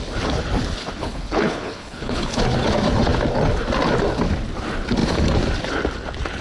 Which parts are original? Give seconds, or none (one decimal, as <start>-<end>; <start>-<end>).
0.0-1.0; 2.4-6.4